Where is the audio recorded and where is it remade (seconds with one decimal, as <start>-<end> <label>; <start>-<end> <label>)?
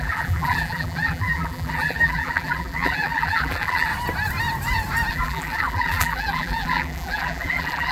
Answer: 0.0-3.9 remade; 3.9-5.1 recorded; 5.1-7.9 remade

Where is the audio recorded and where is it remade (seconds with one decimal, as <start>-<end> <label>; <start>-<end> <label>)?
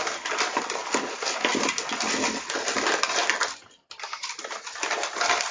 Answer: 0.0-0.8 remade; 0.8-3.0 recorded; 3.0-5.5 remade